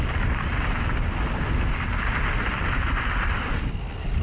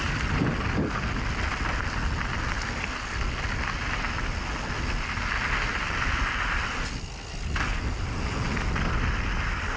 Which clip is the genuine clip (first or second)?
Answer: second